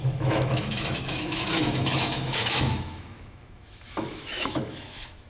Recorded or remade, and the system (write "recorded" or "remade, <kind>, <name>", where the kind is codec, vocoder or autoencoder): remade, autoencoder, DAC-VAE